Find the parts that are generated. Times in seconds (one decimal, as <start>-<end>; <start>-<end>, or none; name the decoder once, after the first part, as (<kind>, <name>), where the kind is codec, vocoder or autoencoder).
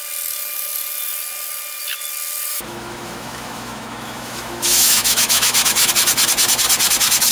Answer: 2.5-5.9 (autoencoder, DAC-VAE)